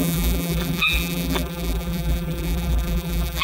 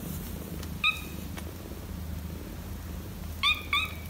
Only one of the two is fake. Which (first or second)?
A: first